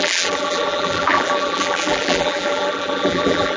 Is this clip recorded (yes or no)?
no